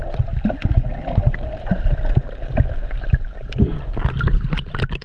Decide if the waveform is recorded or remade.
recorded